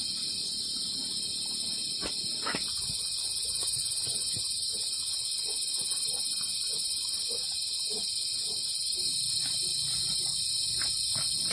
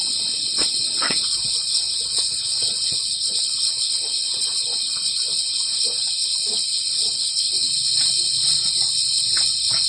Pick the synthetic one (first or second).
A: second